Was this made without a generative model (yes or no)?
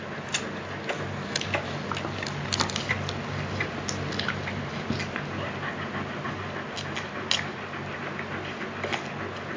yes